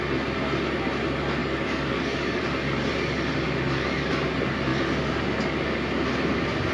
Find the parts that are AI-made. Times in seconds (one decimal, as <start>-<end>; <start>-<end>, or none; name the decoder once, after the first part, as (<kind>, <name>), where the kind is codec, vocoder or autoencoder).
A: 1.4-2.4 (codec, DAC)